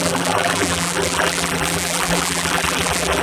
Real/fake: fake